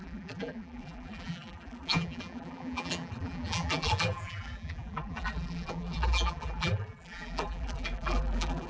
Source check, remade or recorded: remade